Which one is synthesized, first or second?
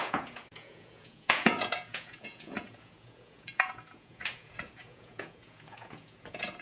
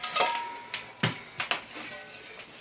first